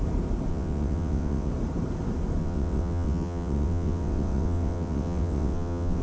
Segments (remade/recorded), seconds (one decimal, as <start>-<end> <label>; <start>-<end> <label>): 0.0-0.5 recorded; 0.5-1.5 remade; 1.5-2.4 recorded; 2.4-6.0 remade